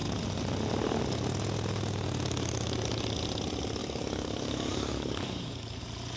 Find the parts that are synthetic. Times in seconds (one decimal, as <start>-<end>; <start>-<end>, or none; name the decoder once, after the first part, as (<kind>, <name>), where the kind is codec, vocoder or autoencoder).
3.8-5.8 (codec, DAC)